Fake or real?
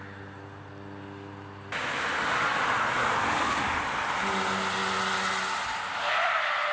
real